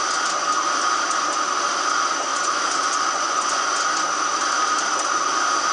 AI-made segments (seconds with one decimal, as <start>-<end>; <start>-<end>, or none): 2.3-3.7